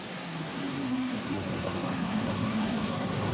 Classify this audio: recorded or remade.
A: remade